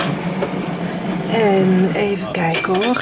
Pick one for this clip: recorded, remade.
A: recorded